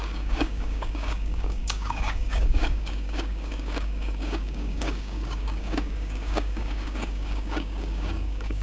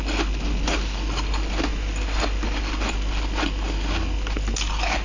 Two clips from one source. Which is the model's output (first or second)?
first